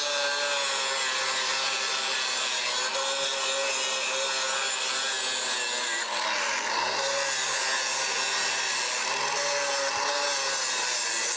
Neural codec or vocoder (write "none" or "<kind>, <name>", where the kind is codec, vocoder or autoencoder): none